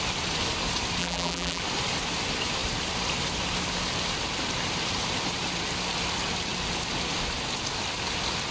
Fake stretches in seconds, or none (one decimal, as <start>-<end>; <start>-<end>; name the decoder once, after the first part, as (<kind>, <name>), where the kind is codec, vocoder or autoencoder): 1.0-1.6 (vocoder, BigVGAN v2)